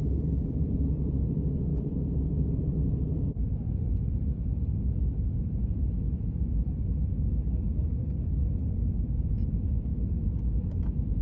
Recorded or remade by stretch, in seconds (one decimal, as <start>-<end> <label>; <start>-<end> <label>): 0.0-9.9 remade; 9.9-10.5 recorded; 10.5-11.2 remade

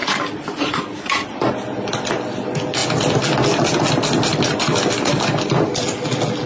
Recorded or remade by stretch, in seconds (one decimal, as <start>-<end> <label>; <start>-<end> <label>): 0.0-2.1 remade; 2.1-4.3 recorded; 4.3-6.1 remade; 6.1-6.5 recorded